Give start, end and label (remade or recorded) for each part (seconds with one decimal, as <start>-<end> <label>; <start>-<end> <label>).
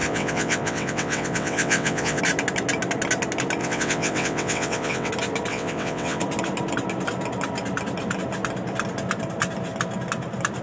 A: 0.0-2.2 remade; 2.2-3.6 recorded; 3.6-5.1 remade; 5.1-5.5 recorded; 5.5-6.2 remade; 6.2-10.6 recorded